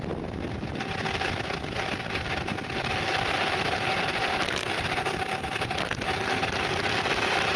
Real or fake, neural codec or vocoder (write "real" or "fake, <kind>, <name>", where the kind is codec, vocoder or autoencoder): real